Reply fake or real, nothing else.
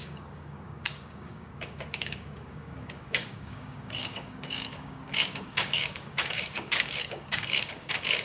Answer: fake